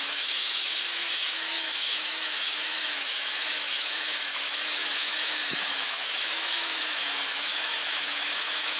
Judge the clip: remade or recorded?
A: remade